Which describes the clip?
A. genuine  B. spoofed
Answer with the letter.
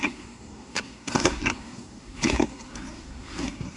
B